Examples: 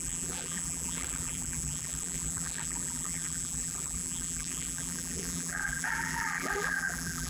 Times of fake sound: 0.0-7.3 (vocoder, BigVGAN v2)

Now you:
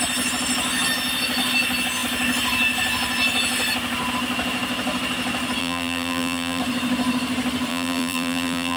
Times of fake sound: 5.6-6.6 (vocoder, BigVGAN v2); 7.7-8.8

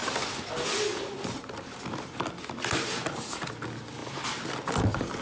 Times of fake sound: none

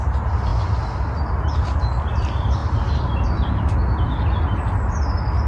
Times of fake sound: 2.6-3.6 (vocoder, BigVGAN v2)

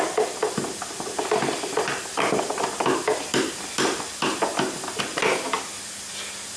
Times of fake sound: 3.3-5.0 (vocoder, BigVGAN v2)